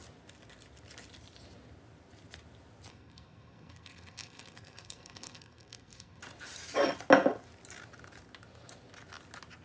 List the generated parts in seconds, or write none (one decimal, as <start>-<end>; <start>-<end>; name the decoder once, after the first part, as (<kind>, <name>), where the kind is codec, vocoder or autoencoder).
2.9-6.2 (codec, SNAC)